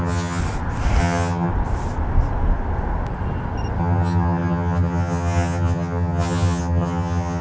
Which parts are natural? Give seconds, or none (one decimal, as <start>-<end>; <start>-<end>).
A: 0.4-1.0; 1.5-3.8